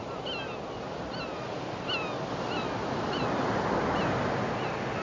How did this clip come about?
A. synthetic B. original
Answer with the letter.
B